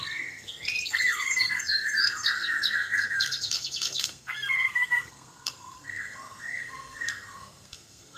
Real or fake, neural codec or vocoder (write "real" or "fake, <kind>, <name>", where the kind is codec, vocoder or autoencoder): fake, codec, SNAC